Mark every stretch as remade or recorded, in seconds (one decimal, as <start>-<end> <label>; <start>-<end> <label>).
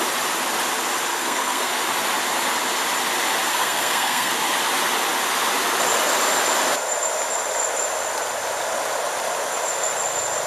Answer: 0.0-1.1 recorded; 1.1-1.7 remade; 1.7-3.5 recorded; 3.5-4.3 remade; 4.3-10.5 recorded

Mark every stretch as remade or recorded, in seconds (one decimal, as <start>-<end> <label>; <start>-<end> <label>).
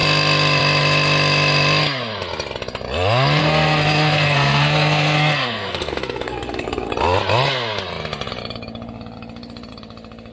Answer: 0.0-3.4 recorded; 3.4-6.9 remade; 6.9-10.3 recorded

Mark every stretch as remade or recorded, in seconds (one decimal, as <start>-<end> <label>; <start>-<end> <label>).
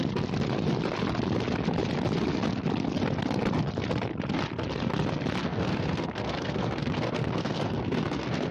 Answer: 0.0-5.4 recorded; 5.4-8.5 remade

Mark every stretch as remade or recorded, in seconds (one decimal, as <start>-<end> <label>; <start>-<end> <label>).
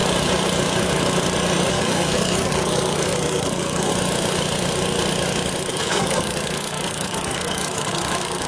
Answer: 0.0-1.7 recorded; 1.7-3.9 remade; 3.9-5.7 recorded; 5.7-8.5 remade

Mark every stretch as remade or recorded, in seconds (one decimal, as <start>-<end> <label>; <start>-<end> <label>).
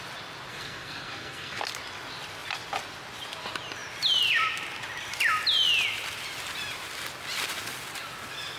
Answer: 0.0-0.5 recorded; 0.5-1.6 remade; 1.6-8.6 recorded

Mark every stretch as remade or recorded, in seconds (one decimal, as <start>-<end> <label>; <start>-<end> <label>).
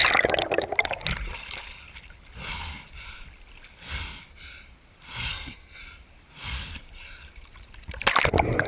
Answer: 0.0-5.3 recorded; 5.3-5.8 remade; 5.8-8.7 recorded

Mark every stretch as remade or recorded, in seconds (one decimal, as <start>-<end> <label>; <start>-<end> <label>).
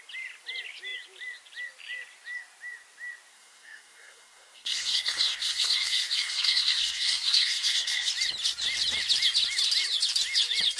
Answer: 0.0-3.3 recorded; 3.3-8.1 remade; 8.1-10.8 recorded